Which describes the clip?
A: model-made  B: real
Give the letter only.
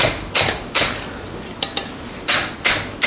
B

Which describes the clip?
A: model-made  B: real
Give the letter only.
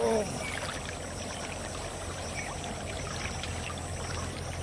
A